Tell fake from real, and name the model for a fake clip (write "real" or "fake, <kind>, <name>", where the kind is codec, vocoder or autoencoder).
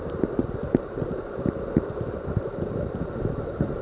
real